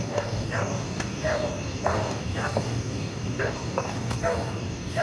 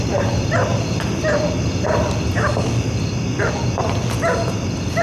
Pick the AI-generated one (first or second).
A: first